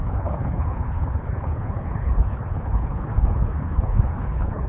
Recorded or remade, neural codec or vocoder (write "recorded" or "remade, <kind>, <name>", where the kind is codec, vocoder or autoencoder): remade, codec, HILCodec